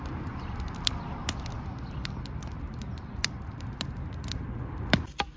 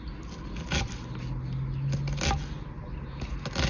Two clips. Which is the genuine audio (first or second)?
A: second